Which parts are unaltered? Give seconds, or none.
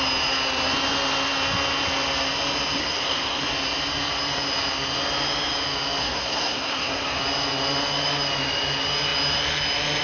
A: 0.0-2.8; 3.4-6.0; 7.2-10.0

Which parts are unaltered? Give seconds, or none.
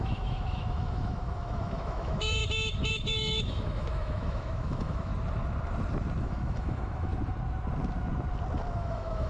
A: 2.4-2.9; 5.1-6.2; 7.1-8.7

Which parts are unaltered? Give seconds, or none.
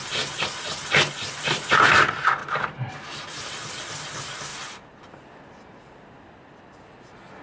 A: 0.0-7.4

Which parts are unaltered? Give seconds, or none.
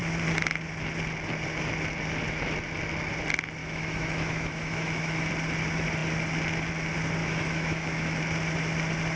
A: 0.0-3.6; 5.3-7.2; 8.2-9.2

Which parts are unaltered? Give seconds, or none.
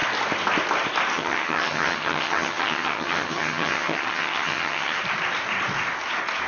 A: 0.0-1.1; 5.0-6.5